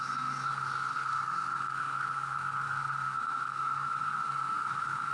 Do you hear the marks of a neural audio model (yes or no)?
yes